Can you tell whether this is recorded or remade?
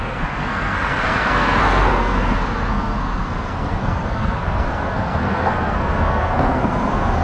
remade